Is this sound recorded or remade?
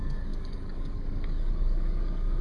remade